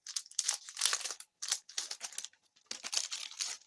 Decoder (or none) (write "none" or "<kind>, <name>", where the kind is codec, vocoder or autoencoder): none